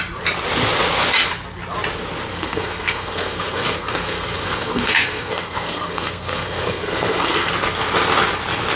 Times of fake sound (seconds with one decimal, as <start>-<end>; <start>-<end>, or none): 2.3-7.5